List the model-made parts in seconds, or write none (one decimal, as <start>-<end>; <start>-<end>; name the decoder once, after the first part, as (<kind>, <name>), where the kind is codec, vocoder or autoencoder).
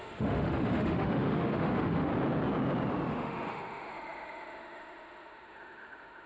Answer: 0.0-2.1 (autoencoder, DAC-VAE); 3.1-6.3